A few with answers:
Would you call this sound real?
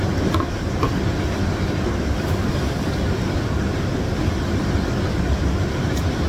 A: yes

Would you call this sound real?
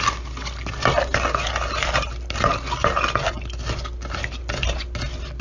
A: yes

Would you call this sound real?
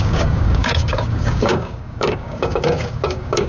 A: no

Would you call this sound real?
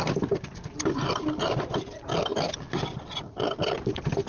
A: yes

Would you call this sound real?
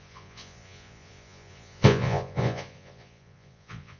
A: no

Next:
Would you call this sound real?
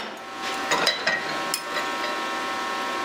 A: yes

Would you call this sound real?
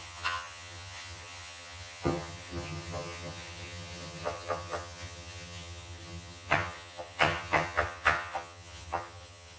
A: no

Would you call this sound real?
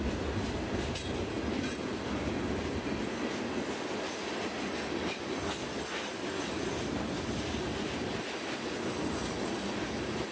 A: yes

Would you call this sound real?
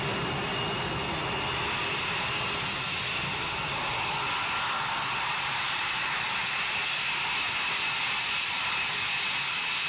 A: yes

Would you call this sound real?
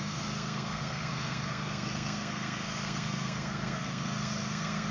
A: no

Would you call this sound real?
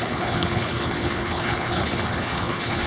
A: no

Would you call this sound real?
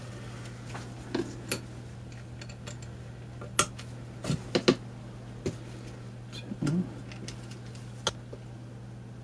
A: yes